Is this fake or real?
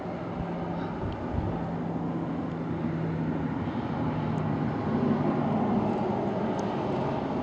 real